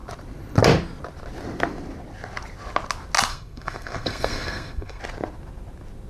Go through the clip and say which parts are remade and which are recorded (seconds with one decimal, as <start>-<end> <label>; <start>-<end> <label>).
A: 0.0-3.3 recorded; 3.3-5.0 remade; 5.0-6.1 recorded